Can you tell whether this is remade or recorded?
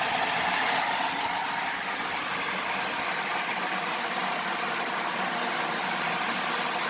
recorded